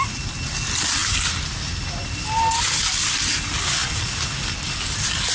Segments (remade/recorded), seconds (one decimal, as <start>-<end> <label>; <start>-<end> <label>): 0.0-5.3 recorded